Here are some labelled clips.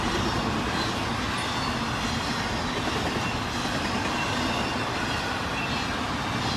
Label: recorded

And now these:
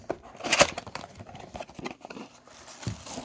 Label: remade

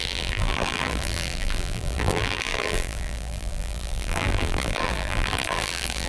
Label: remade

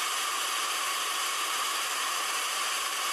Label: remade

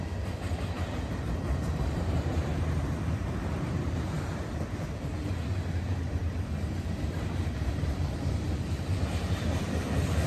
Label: remade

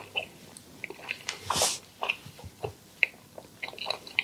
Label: remade